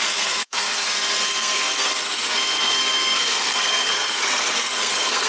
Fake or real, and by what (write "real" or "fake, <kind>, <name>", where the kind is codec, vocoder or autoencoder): fake, codec, SNAC